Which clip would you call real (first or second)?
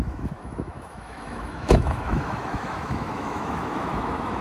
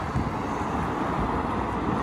second